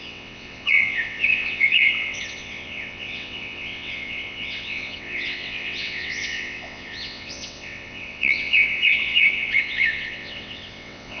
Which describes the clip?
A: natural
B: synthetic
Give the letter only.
B